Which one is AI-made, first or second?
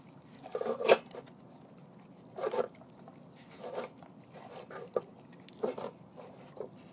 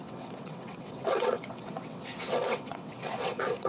second